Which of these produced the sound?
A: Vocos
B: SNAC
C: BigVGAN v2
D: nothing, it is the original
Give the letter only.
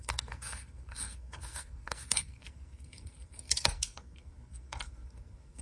B